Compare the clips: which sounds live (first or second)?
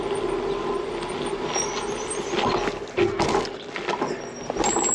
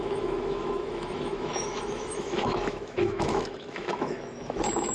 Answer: first